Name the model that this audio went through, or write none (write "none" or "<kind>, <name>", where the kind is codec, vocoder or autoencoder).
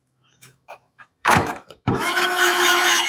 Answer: autoencoder, DAC-VAE